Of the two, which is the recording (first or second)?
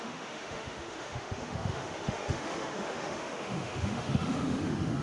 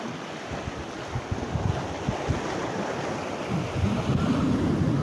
second